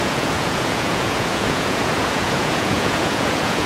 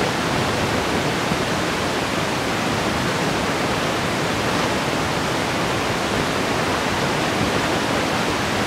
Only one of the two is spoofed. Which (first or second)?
first